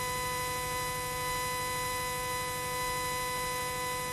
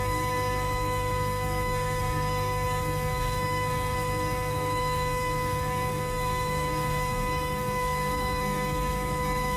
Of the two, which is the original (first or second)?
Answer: first